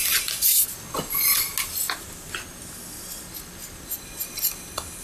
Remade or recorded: recorded